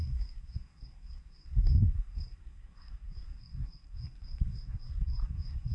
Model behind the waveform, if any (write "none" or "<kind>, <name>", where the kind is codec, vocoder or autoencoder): codec, SNAC